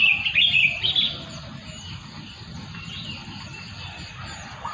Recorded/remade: recorded